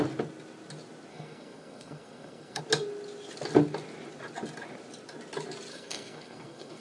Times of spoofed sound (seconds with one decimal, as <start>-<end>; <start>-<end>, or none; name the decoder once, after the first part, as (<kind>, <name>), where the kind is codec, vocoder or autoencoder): 1.1-2.6 (codec, SNAC); 5.7-6.8